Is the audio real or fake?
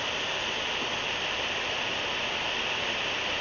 fake